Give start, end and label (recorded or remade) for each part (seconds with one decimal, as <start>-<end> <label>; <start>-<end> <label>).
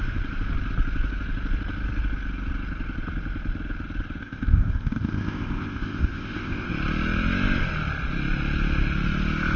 0.0-4.2 recorded; 4.2-6.7 remade; 6.7-9.6 recorded